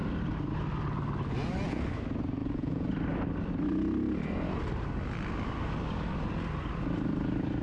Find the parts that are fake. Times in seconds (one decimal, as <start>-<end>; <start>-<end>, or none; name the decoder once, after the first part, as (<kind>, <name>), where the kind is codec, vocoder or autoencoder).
2.4-2.9 (vocoder, Vocos)